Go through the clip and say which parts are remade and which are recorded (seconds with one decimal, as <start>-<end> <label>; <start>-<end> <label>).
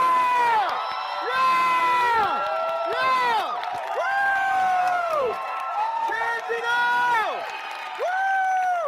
0.0-4.8 recorded; 4.8-6.6 remade; 6.6-8.9 recorded